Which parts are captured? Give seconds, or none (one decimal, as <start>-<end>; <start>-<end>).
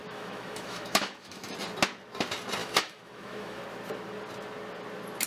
1.5-2.6; 3.6-5.3